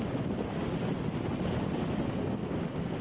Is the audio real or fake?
real